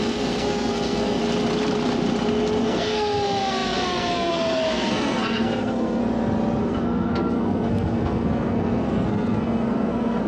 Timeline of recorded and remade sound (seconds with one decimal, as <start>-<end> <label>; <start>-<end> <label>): 0.0-1.2 remade; 1.2-2.6 recorded; 2.6-6.0 remade; 6.0-6.6 recorded; 6.6-10.3 remade